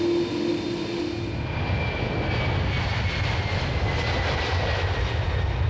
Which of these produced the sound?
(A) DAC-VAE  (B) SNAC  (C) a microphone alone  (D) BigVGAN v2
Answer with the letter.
C